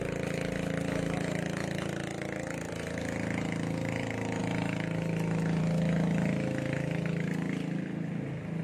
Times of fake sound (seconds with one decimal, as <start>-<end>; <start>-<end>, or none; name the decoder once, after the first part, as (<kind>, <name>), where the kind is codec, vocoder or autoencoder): 1.6-2.7 (vocoder, BigVGAN v2)